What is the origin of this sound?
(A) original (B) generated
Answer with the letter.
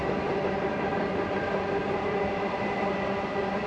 A